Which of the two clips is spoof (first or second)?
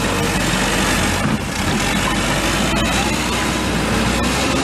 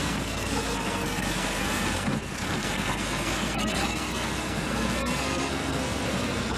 second